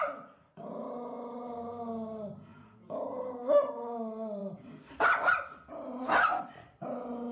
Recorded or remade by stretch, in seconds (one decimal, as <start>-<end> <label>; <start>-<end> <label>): 0.0-2.5 recorded; 2.5-3.2 remade; 3.2-7.3 recorded